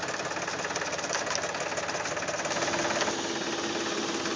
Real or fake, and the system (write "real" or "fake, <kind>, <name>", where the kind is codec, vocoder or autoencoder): real